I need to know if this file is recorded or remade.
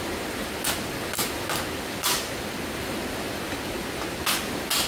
recorded